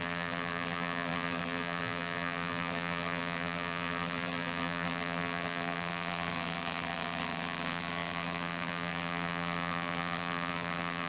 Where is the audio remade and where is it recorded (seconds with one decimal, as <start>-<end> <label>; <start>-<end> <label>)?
0.0-11.1 remade